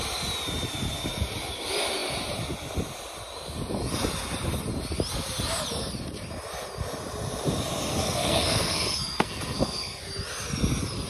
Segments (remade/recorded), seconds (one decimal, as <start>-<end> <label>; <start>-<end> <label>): 0.0-7.9 recorded; 7.9-10.0 remade; 10.0-11.1 recorded